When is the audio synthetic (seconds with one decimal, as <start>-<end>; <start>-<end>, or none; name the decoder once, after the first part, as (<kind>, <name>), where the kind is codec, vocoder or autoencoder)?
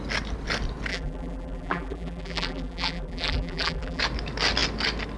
0.9-4.0 (vocoder, BigVGAN v2)